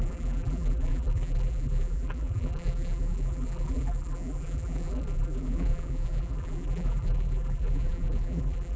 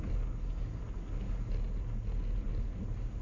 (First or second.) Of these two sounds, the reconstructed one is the first